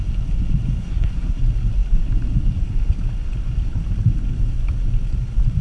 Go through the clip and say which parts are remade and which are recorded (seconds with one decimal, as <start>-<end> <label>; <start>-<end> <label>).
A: 0.0-0.8 recorded; 0.8-1.4 remade; 1.4-5.6 recorded